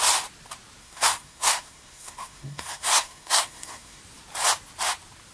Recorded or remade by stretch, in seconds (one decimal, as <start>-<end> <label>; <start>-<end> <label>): 0.0-0.8 recorded; 0.8-4.0 remade; 4.0-5.3 recorded